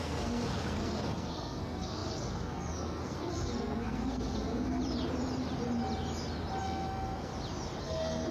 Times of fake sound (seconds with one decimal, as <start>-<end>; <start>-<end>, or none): 0.0-4.8; 6.6-7.3; 7.8-8.3